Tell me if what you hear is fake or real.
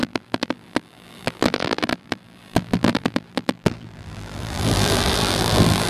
fake